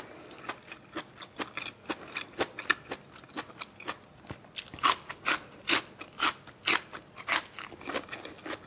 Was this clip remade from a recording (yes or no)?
no